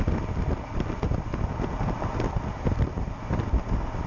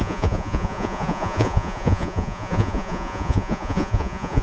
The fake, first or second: second